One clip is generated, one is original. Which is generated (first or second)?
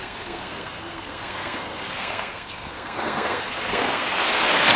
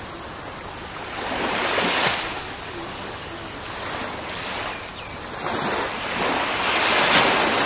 first